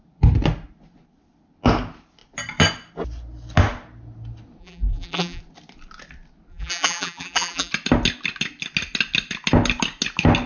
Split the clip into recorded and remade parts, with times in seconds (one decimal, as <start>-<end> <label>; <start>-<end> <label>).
0.0-4.6 recorded; 4.6-5.4 remade; 5.4-6.5 recorded; 6.5-7.7 remade; 7.7-10.5 recorded